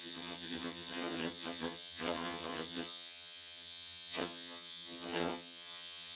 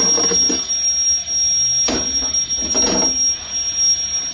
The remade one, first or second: first